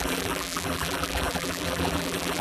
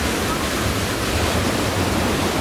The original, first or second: second